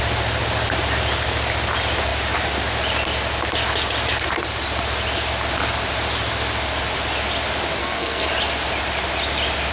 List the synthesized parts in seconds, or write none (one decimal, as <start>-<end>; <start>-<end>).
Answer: 7.8-8.3